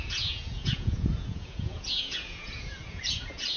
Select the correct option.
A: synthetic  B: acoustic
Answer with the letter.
A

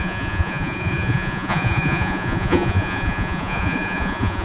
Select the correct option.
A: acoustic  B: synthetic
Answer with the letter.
B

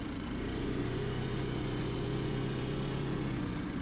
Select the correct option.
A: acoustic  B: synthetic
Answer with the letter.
B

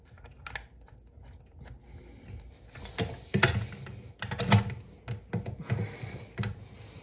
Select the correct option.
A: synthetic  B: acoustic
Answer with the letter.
B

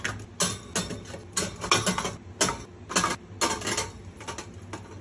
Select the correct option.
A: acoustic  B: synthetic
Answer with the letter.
A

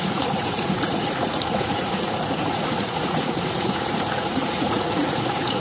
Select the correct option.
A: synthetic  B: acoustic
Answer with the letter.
A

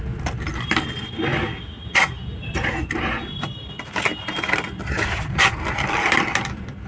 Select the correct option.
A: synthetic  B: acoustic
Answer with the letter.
B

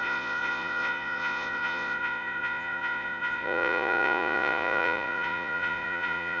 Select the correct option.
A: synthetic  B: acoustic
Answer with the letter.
A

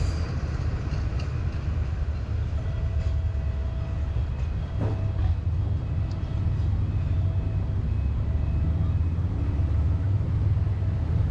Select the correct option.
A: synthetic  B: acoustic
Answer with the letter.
B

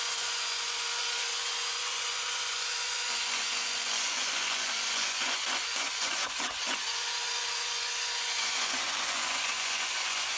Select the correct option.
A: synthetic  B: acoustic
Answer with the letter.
A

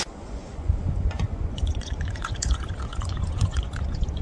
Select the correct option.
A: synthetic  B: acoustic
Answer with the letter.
A